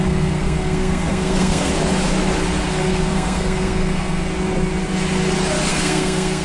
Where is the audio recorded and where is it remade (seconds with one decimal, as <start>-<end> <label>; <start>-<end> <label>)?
0.0-1.7 remade; 1.7-2.7 recorded; 2.7-4.2 remade; 4.2-5.7 recorded; 5.7-6.4 remade